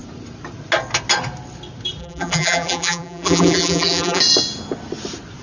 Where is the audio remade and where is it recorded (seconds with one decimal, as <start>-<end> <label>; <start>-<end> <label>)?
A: 0.0-2.0 recorded; 2.0-4.2 remade; 4.2-5.4 recorded